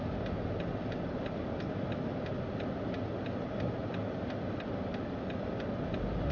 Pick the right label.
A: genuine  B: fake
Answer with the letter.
A